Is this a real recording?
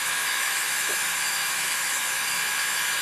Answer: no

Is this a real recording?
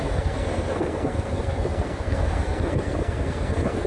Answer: no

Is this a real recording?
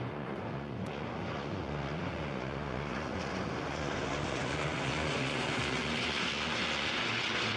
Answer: no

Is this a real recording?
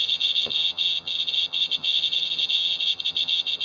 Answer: no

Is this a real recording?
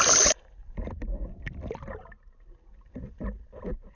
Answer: no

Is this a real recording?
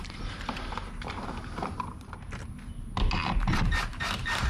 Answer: no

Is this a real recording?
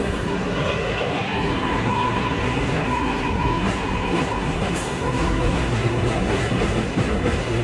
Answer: no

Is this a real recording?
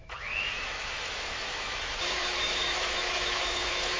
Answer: no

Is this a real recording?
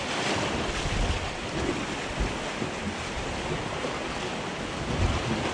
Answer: yes